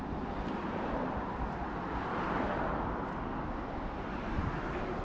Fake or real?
real